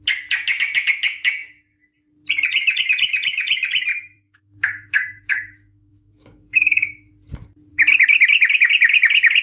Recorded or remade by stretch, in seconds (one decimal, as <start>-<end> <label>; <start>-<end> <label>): 0.0-3.9 recorded; 3.9-7.1 remade; 7.1-9.4 recorded